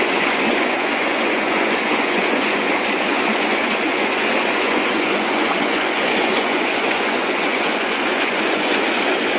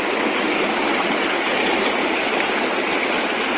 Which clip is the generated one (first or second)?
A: first